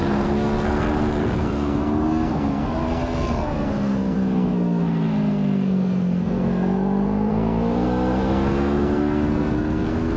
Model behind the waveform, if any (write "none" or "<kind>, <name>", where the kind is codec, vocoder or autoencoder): codec, SNAC